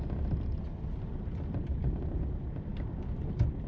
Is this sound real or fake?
real